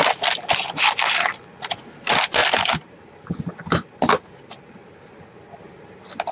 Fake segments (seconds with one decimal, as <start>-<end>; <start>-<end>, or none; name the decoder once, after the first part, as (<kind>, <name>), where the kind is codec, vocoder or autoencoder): none